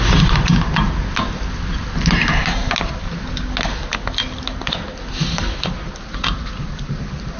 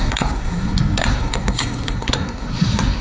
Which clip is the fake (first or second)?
second